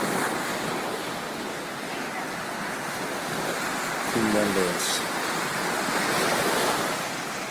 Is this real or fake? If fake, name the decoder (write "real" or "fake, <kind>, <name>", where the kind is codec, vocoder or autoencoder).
real